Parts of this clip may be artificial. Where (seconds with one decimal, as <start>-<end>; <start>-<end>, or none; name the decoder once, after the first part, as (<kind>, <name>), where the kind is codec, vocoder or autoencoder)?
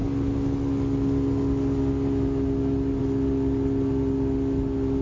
none